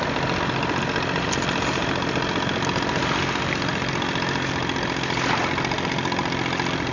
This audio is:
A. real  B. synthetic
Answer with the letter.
A